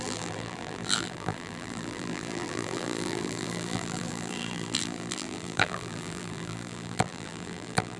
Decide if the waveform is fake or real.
fake